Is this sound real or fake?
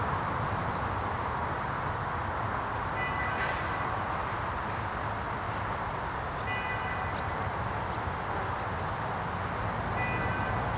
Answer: real